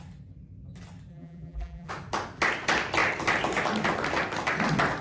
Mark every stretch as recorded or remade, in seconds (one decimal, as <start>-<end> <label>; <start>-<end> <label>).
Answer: 0.0-1.1 recorded; 1.1-1.9 remade; 1.9-5.0 recorded